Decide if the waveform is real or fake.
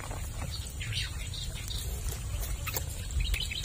real